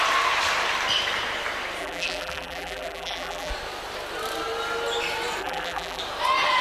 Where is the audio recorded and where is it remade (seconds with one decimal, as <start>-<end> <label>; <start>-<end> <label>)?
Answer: 0.0-1.8 recorded; 1.8-3.5 remade; 3.5-5.4 recorded; 5.4-6.0 remade; 6.0-6.6 recorded

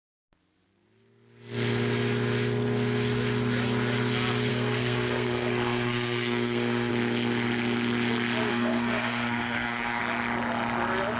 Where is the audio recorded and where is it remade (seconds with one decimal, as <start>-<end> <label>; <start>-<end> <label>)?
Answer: 0.0-4.5 recorded; 4.5-6.9 remade; 6.9-8.5 recorded; 8.5-10.0 remade; 10.0-11.2 recorded

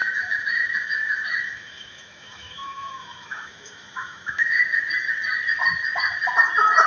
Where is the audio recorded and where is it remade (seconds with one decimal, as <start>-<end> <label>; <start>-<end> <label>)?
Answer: 0.0-4.6 remade; 4.6-6.9 recorded

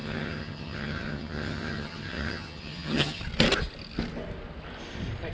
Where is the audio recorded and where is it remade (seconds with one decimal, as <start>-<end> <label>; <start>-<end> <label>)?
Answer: 0.0-3.2 remade; 3.2-5.3 recorded